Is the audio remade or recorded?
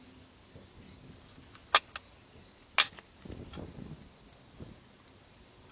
recorded